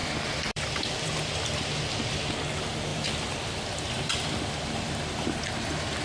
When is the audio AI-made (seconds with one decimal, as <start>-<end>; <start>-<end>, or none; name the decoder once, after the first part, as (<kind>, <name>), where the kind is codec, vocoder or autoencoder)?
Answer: 0.0-2.2 (vocoder, BigVGAN v2); 2.9-5.1